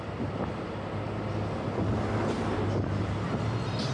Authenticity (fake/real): real